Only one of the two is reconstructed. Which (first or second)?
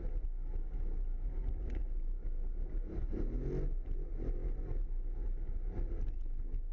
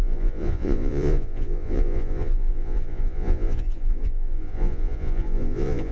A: second